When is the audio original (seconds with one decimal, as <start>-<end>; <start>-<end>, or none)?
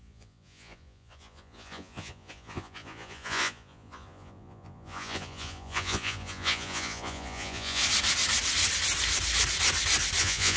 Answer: 7.8-10.2